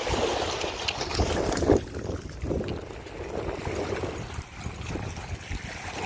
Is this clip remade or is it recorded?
recorded